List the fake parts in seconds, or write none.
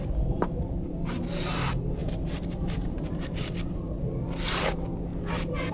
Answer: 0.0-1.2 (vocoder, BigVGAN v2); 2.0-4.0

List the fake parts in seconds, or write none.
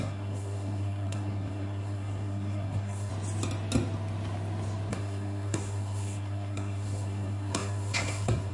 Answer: 0.0-3.1 (codec, SNAC); 4.9-8.5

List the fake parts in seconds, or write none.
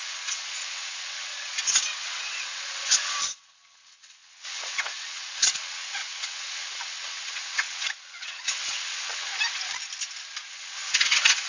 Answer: 0.0-9.3 (vocoder, WaveNeXt); 10.5-11.5